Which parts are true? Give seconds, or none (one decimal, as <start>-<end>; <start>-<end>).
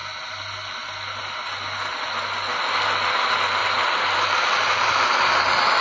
0.0-5.8